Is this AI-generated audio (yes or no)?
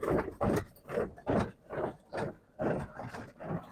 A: no